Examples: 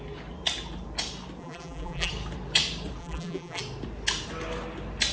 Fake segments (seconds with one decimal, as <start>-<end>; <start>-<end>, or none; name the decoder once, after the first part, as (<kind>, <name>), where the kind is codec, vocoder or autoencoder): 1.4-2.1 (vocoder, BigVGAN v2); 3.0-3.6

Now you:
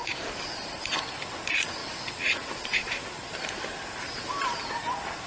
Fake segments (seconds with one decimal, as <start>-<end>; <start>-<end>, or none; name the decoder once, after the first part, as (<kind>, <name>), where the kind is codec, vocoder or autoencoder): 0.0-0.8 (vocoder, BigVGAN v2); 1.8-4.3

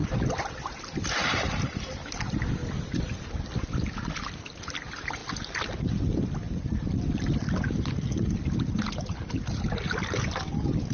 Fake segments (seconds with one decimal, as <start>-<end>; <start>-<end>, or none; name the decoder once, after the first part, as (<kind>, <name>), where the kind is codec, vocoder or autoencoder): 2.6-3.2 (vocoder, BigVGAN v2)